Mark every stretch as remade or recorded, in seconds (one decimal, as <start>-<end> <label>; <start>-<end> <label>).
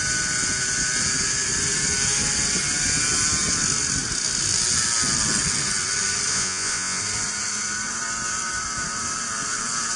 0.0-6.3 recorded; 6.3-7.0 remade; 7.0-10.0 recorded